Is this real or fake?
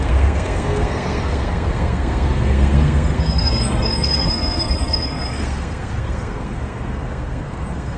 fake